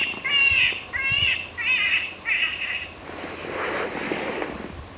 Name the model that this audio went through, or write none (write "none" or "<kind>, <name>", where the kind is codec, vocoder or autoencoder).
none